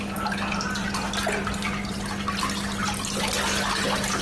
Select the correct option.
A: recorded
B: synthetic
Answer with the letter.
A